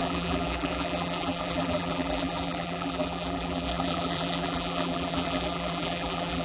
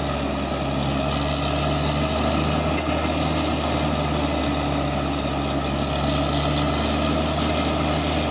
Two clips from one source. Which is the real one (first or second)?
second